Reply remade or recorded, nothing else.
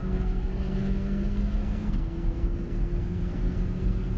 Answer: remade